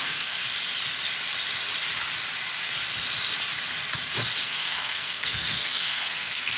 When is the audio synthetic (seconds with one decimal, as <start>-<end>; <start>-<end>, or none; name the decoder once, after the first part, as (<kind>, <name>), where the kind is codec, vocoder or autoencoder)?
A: 0.0-0.4 (codec, SNAC); 4.4-6.6